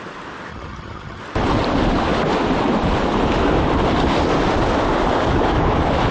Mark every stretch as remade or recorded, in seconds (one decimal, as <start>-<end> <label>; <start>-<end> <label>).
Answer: 0.0-0.5 recorded; 0.5-1.2 remade; 1.2-6.1 recorded